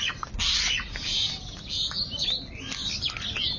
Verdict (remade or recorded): recorded